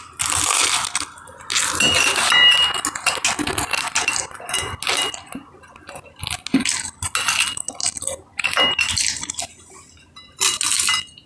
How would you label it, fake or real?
real